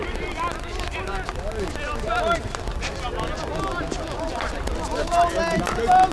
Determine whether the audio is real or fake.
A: real